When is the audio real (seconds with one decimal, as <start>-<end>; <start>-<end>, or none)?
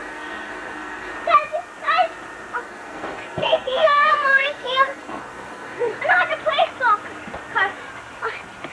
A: 1.1-2.6; 5.9-8.7